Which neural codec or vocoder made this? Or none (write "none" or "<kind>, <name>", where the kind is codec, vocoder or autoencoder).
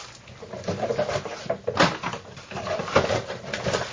none